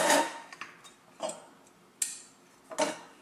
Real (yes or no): yes